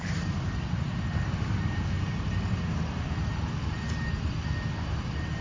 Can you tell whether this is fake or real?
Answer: fake